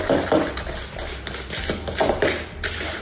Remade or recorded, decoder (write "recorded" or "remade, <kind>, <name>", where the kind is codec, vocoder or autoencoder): recorded